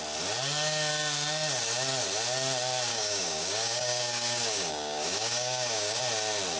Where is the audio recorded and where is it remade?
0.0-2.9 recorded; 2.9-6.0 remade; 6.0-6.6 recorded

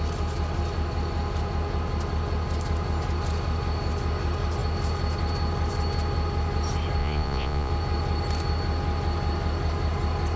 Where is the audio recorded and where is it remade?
0.0-7.0 recorded; 7.0-7.7 remade; 7.7-10.4 recorded

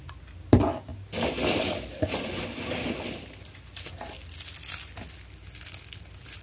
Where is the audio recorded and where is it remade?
0.0-6.4 recorded